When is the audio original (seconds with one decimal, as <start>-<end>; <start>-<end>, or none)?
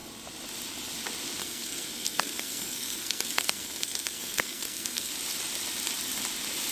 0.0-1.4; 5.1-6.7